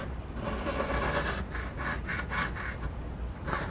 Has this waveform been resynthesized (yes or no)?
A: no